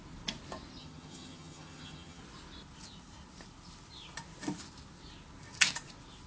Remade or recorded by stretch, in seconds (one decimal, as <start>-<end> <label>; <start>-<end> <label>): 0.0-0.8 recorded; 0.8-2.2 remade; 2.2-6.3 recorded